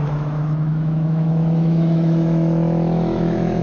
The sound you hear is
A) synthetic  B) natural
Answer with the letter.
A